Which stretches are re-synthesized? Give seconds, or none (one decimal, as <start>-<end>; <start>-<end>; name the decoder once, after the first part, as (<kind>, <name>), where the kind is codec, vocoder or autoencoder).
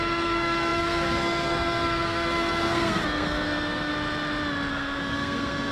0.0-3.9 (codec, SNAC); 4.7-5.7